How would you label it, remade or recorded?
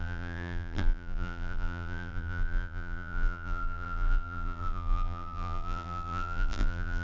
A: remade